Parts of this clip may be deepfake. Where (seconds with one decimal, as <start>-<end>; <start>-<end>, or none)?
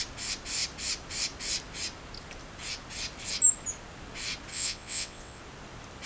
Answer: 4.5-5.4